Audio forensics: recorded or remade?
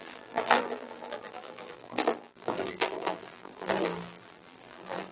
remade